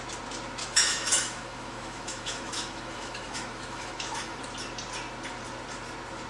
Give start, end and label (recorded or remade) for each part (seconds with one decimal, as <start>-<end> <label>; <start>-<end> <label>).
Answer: 0.0-0.6 recorded; 0.6-4.4 remade; 4.4-6.3 recorded